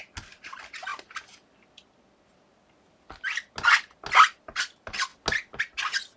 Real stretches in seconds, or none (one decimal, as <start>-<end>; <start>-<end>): 0.0-6.2